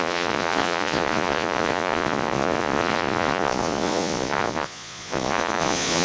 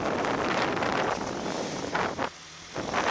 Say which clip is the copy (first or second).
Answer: first